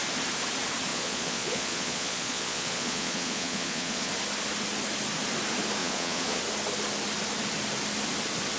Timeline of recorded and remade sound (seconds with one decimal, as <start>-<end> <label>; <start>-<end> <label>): 0.0-0.9 recorded; 0.9-4.1 remade; 4.1-5.8 recorded; 5.8-6.4 remade; 6.4-8.6 recorded